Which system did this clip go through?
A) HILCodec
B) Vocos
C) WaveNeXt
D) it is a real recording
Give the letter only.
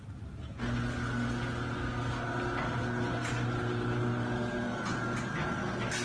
D